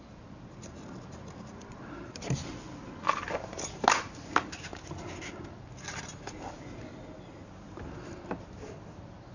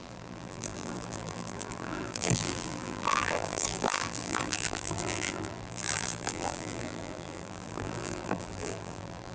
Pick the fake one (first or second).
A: second